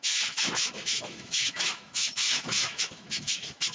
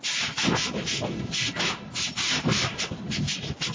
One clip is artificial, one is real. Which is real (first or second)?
second